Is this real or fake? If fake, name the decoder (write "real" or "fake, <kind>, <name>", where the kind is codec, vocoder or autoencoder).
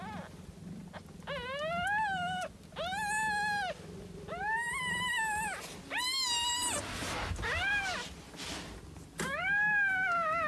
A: real